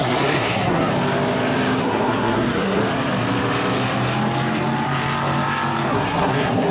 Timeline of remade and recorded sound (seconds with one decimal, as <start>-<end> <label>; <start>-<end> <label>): 0.0-0.9 remade; 0.9-1.8 recorded; 1.8-2.8 remade; 2.8-5.9 recorded; 5.9-6.7 remade